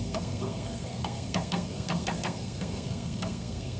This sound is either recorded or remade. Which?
remade